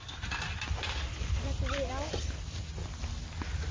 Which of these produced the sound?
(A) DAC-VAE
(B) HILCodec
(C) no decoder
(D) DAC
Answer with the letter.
C